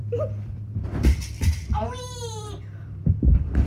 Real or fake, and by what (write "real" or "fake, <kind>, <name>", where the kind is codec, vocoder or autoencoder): fake, vocoder, BigVGAN v2